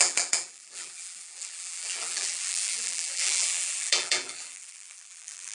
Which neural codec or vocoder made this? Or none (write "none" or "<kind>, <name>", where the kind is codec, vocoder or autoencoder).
vocoder, BigVGAN v2